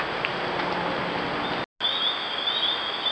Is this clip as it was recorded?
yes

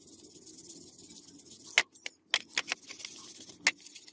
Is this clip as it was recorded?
yes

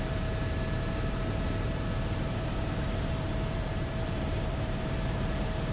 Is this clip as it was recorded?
no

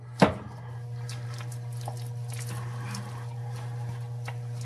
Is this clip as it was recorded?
yes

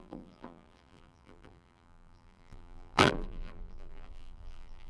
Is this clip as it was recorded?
no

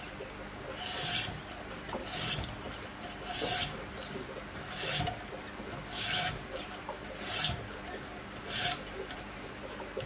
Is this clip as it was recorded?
yes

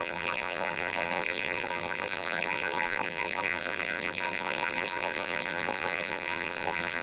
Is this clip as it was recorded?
no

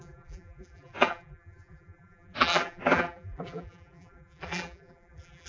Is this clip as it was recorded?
no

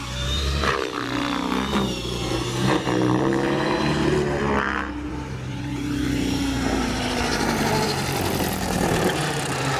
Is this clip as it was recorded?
no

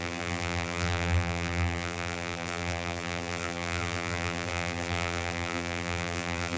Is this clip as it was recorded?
no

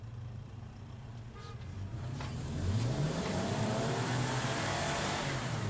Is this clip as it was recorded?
no